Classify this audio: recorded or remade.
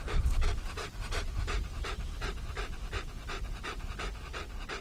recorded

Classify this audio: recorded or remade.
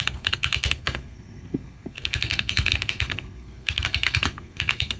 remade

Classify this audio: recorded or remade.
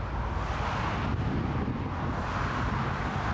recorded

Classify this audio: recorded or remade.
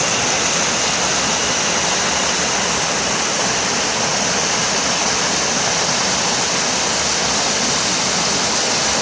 recorded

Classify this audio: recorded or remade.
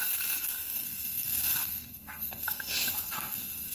remade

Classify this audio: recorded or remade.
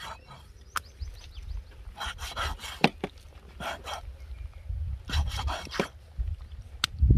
recorded